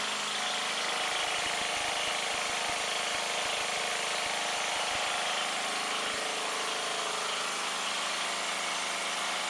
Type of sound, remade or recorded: recorded